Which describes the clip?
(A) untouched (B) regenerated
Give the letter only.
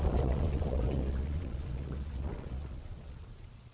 B